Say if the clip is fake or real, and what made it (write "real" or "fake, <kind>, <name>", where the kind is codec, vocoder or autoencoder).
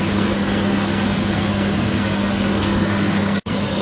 fake, codec, SNAC